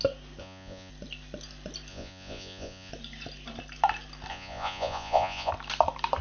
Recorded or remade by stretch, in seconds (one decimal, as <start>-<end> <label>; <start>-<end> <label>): 0.0-0.4 recorded; 0.4-0.9 remade; 0.9-1.9 recorded; 1.9-2.9 remade; 2.9-4.3 recorded; 4.3-5.5 remade; 5.5-6.2 recorded